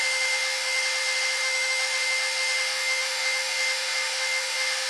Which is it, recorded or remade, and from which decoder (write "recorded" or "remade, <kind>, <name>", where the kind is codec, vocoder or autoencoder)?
remade, autoencoder, DAC-VAE